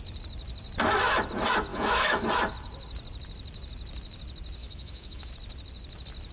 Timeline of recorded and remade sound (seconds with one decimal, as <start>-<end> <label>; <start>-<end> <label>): 0.0-1.7 recorded; 1.7-2.2 remade; 2.2-4.6 recorded; 4.6-5.3 remade; 5.3-6.3 recorded